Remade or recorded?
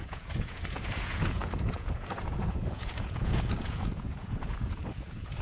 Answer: remade